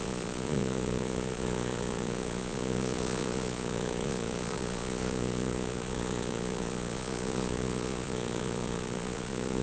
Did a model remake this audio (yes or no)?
yes